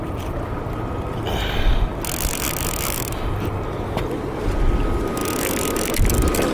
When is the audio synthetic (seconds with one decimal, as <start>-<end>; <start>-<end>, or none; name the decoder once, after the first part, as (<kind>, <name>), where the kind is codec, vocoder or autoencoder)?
none